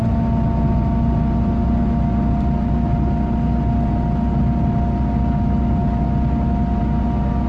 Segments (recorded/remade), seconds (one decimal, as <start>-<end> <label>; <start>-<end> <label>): 0.0-7.5 recorded